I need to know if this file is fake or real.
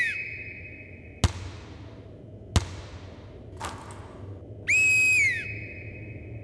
real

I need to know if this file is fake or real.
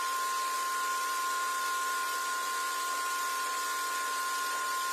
real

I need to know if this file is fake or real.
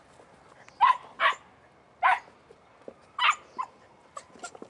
real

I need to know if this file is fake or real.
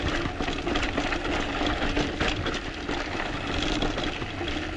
real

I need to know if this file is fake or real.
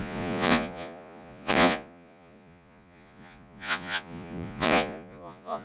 fake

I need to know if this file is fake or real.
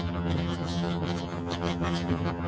fake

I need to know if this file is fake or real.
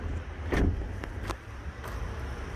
real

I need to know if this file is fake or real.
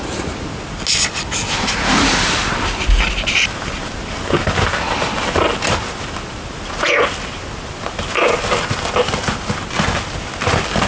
real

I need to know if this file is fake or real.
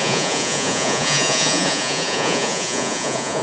fake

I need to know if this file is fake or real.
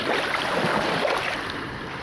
real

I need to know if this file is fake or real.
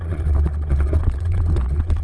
fake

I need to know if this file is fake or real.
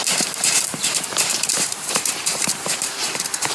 fake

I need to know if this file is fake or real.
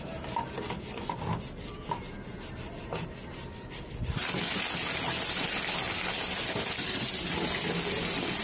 real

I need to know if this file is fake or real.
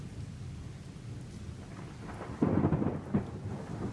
real